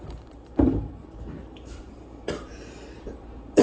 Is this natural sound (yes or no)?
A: no